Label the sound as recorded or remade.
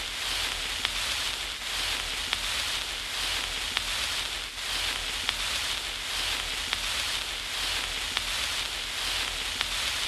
recorded